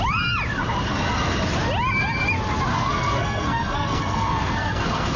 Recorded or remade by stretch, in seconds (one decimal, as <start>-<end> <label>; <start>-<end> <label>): 0.0-2.7 recorded; 2.7-5.2 remade